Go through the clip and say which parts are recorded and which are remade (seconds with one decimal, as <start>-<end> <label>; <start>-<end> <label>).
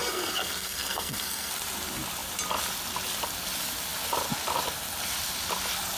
0.0-1.5 remade; 1.5-6.0 recorded